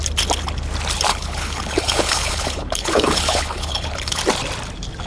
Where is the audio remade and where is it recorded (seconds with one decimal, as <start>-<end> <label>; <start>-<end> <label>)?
0.0-1.1 recorded; 1.1-4.2 remade; 4.2-5.1 recorded